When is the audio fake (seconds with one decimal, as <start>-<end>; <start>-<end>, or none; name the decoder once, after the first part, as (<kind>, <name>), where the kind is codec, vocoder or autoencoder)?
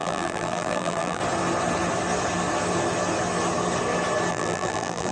0.0-1.2 (vocoder, BigVGAN v2); 4.3-5.1